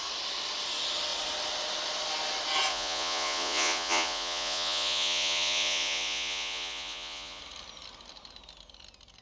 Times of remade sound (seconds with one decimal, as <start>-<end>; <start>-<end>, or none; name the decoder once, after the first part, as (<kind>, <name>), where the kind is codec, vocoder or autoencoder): 2.7-7.4 (vocoder, Vocos)